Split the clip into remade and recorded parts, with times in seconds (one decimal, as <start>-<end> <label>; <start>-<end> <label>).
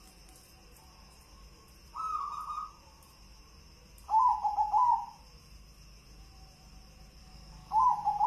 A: 0.0-7.2 recorded; 7.2-7.9 remade; 7.9-8.3 recorded